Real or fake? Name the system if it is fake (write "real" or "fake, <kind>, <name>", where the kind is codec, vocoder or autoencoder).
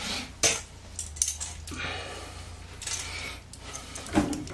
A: real